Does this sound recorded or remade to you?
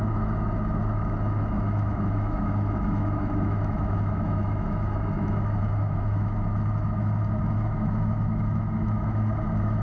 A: remade